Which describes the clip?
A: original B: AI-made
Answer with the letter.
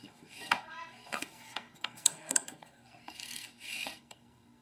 B